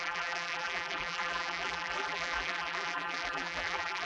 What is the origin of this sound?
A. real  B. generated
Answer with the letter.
B